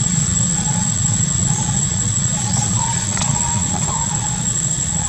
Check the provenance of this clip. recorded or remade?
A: remade